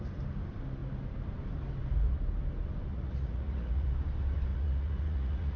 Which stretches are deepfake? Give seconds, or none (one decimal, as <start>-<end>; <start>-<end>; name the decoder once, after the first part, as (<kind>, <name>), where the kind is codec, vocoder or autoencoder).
2.9-3.9 (vocoder, Vocos); 4.5-5.6